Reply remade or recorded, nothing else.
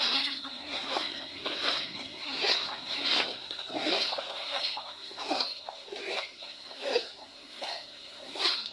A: remade